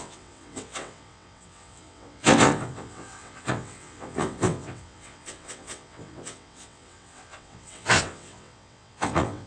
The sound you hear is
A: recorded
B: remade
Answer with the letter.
B